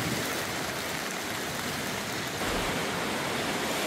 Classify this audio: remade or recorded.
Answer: recorded